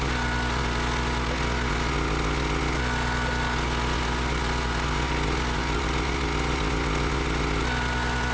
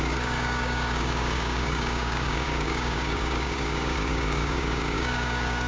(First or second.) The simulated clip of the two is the second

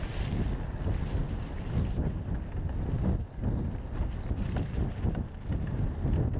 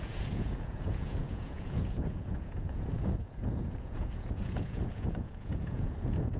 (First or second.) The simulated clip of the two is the second